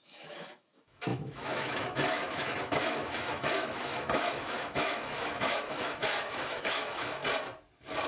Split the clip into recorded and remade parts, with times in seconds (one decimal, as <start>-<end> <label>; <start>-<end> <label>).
0.0-7.2 remade; 7.2-8.1 recorded